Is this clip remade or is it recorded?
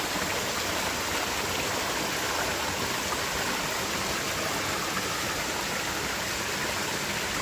recorded